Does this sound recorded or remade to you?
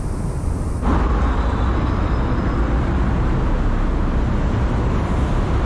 recorded